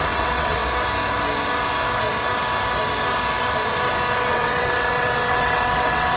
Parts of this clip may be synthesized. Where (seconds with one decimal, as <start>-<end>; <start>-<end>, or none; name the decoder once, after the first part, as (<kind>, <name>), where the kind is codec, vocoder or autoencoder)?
0.0-0.6 (vocoder, WaveNeXt); 4.3-6.2